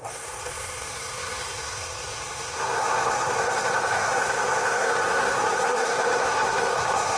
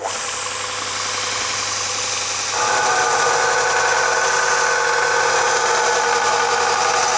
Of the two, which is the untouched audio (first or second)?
second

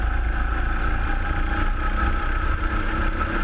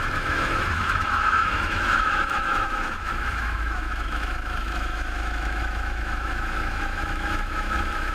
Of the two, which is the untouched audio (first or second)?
first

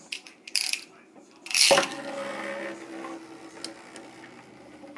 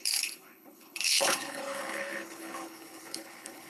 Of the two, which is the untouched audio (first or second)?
first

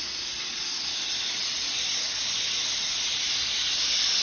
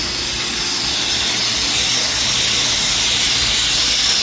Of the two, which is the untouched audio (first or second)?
second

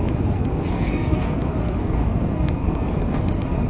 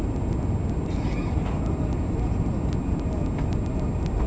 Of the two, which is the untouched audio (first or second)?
second